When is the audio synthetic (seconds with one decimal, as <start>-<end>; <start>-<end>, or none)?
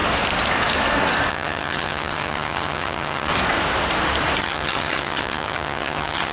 1.3-3.3; 4.4-6.3